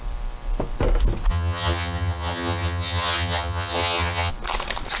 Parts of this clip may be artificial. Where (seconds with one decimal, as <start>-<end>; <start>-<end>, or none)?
1.3-4.3